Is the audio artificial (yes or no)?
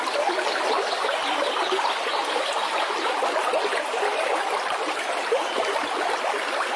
no